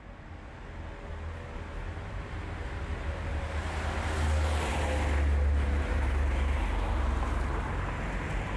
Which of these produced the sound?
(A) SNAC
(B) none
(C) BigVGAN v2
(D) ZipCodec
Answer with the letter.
B